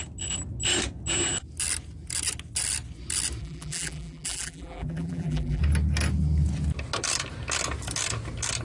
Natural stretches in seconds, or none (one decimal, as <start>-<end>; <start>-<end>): 0.0-3.4; 5.6-8.6